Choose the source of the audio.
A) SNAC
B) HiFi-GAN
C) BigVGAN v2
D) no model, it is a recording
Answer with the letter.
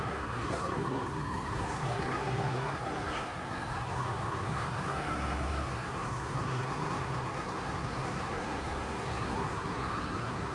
A